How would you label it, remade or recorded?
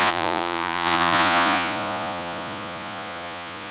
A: remade